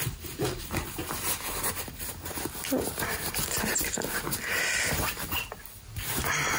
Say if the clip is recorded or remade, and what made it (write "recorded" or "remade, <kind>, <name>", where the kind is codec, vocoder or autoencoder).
remade, vocoder, BigVGAN v2